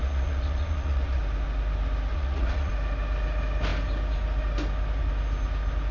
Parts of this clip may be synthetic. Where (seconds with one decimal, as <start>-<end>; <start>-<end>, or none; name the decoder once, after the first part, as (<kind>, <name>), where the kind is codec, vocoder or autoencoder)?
0.0-1.2 (vocoder, Vocos); 2.1-2.7